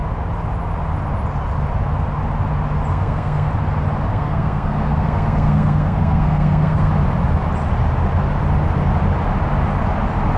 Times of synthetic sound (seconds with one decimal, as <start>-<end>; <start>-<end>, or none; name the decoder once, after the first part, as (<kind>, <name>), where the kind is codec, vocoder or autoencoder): 2.9-3.5 (codec, SNAC); 4.1-6.9